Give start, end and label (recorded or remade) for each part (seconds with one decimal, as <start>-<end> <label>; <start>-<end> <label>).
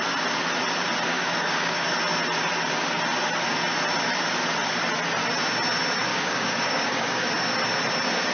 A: 0.0-1.1 recorded; 1.1-1.9 remade; 1.9-6.1 recorded; 6.1-7.3 remade; 7.3-8.3 recorded